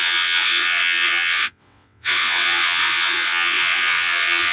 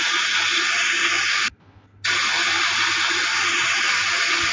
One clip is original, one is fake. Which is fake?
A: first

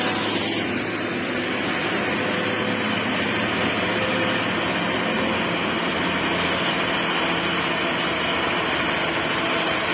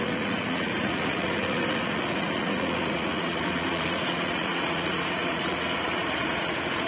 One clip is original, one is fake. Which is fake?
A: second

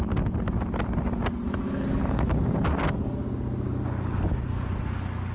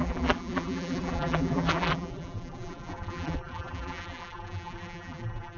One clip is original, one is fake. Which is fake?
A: second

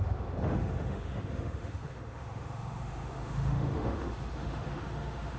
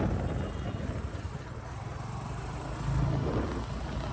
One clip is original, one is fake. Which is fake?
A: first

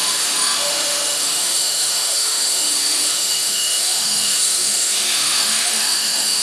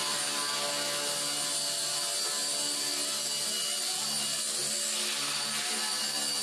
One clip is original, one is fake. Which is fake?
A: first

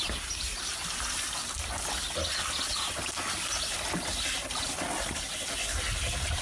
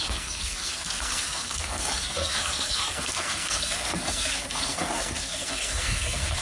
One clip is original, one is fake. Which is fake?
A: second